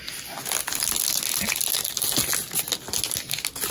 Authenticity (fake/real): real